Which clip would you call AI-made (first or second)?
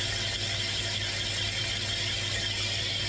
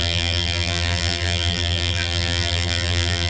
second